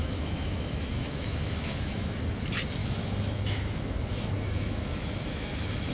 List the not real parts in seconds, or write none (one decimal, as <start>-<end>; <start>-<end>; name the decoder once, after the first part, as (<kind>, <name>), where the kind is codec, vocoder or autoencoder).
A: 0.0-2.2 (autoencoder, DAC-VAE); 2.8-5.9